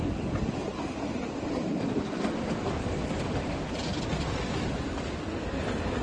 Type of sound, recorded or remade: recorded